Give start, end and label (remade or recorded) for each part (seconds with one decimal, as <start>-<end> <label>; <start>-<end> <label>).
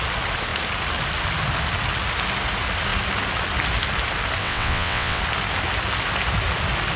0.0-4.4 recorded; 4.4-5.2 remade; 5.2-7.0 recorded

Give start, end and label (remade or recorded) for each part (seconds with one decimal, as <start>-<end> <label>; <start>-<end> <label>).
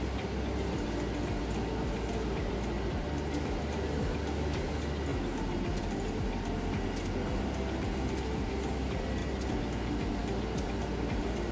0.0-11.5 recorded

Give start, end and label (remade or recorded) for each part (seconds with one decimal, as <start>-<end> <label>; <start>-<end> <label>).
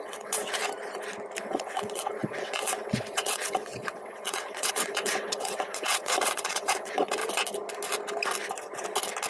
0.0-0.6 remade; 0.6-1.4 recorded; 1.4-7.2 remade; 7.2-9.3 recorded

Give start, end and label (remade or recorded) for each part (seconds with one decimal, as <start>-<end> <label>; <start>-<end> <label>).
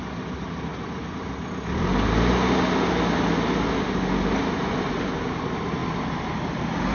0.0-6.9 recorded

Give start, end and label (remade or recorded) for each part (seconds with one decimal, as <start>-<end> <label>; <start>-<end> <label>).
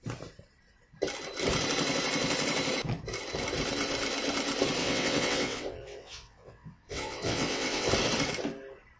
0.0-4.8 recorded; 4.8-7.9 remade; 7.9-9.0 recorded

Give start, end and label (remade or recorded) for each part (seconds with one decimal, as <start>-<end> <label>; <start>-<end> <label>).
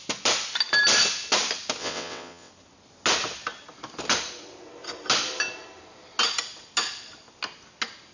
0.0-1.8 recorded; 1.8-2.5 remade; 2.5-8.1 recorded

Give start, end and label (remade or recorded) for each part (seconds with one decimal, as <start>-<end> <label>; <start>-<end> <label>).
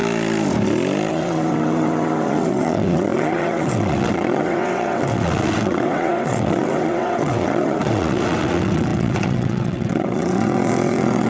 0.0-1.1 recorded; 1.1-11.3 remade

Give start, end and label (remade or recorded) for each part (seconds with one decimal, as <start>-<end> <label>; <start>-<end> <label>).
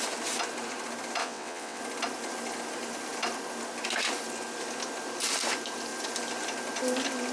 0.0-1.2 recorded; 1.2-1.8 remade; 1.8-7.3 recorded